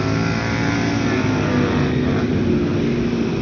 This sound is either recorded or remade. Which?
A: recorded